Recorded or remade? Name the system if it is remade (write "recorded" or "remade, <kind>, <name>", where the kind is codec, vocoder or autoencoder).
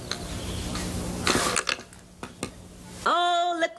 recorded